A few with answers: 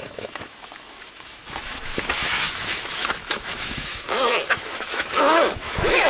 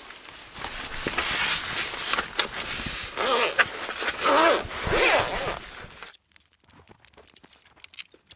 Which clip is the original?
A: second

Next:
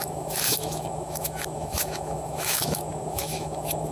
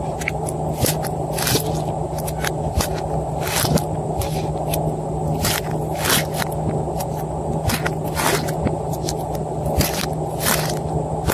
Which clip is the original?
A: second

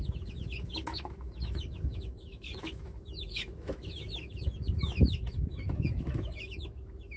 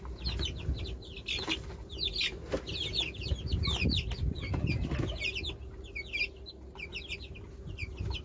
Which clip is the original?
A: second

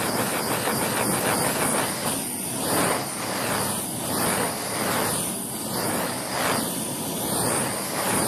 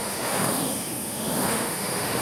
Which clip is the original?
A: first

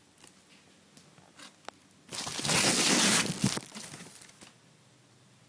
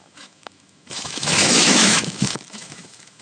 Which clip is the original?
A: first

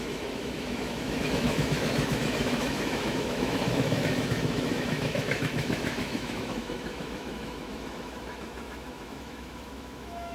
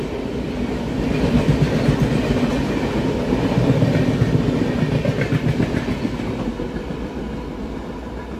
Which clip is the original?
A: second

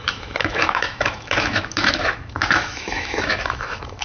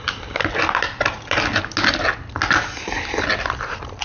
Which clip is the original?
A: second